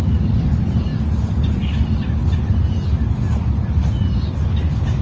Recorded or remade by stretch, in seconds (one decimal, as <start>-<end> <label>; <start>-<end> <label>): 0.0-5.0 recorded